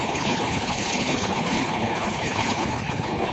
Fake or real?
fake